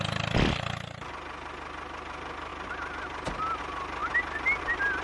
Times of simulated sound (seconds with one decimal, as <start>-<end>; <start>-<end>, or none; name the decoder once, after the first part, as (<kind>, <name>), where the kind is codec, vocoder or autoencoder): none